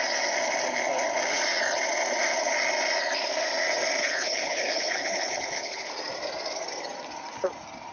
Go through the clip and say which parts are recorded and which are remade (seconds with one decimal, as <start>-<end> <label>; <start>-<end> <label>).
0.0-4.0 recorded; 4.0-5.9 remade; 5.9-7.9 recorded